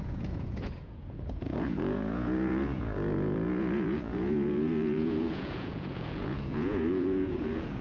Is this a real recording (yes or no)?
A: no